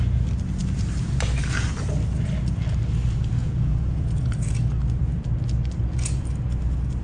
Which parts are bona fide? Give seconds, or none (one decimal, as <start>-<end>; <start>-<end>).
0.0-3.4; 4.5-7.0

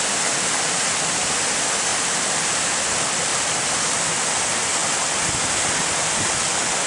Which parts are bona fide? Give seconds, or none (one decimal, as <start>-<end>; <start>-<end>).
0.0-6.9

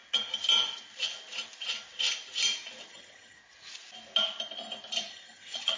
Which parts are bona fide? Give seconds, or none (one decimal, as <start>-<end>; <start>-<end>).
0.0-2.9; 3.4-5.1